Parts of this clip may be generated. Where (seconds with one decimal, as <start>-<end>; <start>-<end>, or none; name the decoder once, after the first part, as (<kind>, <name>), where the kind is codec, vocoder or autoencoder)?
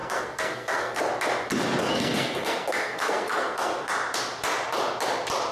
0.0-1.0 (codec, SNAC); 1.8-3.9